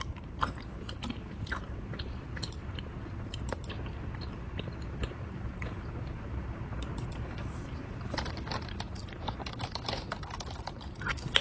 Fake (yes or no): yes